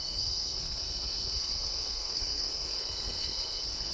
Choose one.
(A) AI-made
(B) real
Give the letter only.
A